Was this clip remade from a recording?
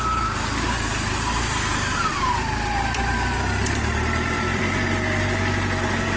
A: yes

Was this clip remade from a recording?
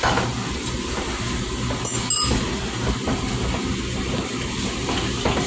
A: no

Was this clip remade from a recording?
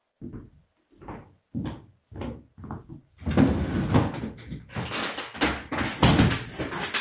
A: no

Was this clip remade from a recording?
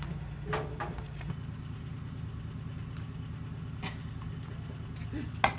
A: no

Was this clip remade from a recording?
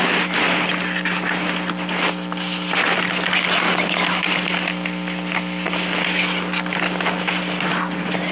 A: no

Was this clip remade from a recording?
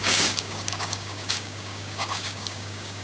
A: yes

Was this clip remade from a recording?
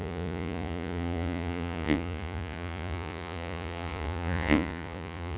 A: yes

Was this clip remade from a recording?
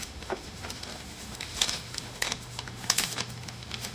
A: yes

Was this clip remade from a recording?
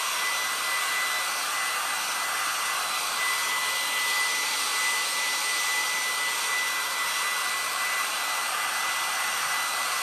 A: no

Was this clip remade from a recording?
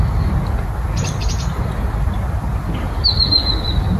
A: no